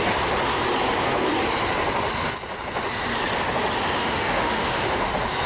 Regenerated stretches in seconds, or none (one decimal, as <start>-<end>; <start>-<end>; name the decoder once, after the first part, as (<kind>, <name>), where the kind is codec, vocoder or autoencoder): 4.0-5.1 (autoencoder, DAC-VAE)